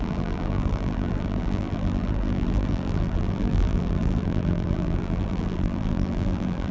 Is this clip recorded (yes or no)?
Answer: no